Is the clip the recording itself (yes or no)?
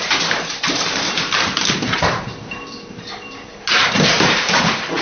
no